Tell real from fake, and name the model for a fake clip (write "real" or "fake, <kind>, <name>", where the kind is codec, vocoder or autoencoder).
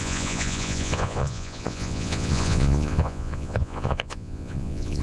fake, vocoder, Vocos